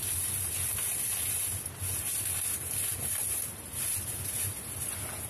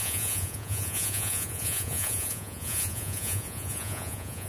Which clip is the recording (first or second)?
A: first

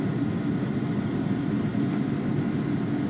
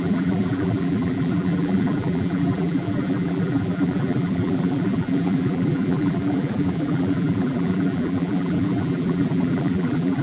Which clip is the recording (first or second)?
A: first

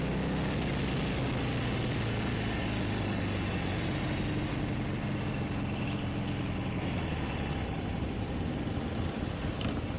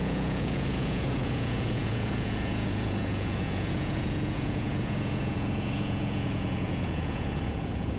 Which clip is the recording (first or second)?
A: first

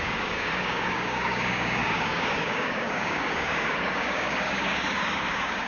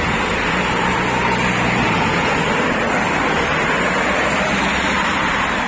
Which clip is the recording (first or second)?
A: second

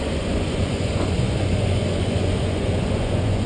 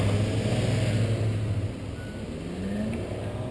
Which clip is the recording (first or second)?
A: second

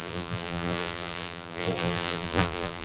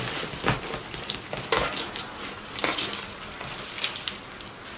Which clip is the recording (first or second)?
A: second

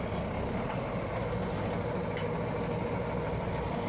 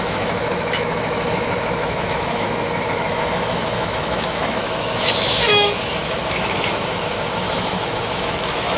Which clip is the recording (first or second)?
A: first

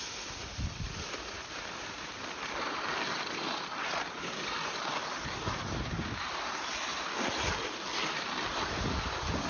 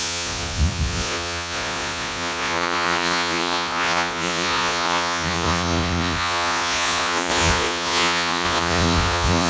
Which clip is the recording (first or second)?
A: first